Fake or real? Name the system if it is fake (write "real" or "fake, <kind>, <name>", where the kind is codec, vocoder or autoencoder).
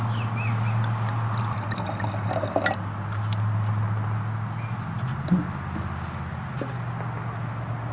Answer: real